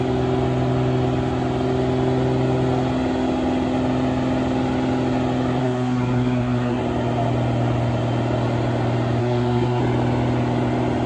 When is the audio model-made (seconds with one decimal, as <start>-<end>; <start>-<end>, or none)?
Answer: 5.6-6.8; 9.2-9.8